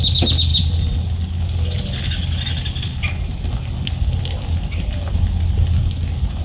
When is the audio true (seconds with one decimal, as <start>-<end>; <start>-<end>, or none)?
0.0-6.4